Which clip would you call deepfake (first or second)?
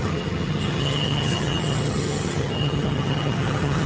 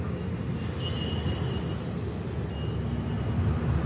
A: first